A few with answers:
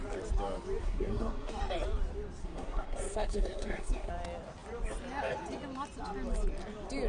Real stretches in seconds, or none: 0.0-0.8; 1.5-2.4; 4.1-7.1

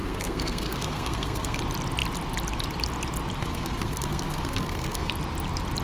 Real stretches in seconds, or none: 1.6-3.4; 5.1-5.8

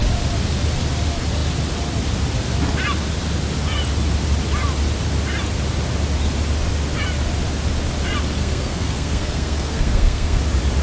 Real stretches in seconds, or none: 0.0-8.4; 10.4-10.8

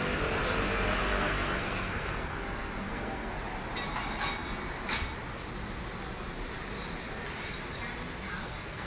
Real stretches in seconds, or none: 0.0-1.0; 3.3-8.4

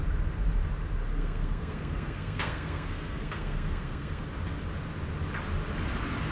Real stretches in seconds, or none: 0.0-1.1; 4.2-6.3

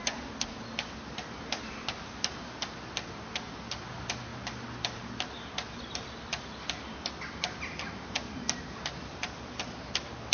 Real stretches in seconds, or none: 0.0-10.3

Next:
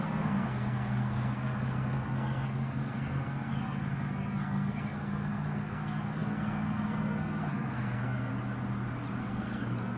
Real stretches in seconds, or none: 8.3-9.2